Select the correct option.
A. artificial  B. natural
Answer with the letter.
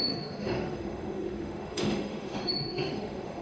A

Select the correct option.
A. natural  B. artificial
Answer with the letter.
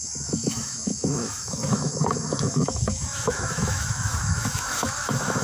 B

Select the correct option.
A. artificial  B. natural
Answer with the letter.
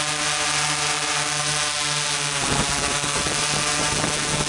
B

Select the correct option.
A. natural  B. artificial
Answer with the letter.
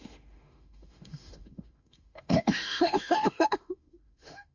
B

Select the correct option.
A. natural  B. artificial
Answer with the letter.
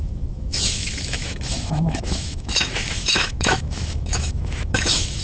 B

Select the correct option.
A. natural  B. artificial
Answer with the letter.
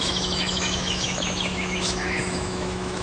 B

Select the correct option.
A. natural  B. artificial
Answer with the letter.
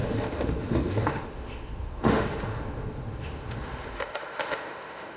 B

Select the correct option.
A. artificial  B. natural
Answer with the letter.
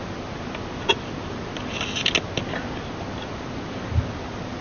B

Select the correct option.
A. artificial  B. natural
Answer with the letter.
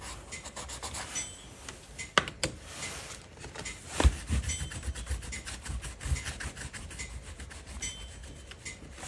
B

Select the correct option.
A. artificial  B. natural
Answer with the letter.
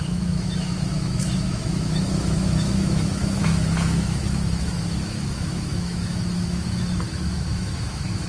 A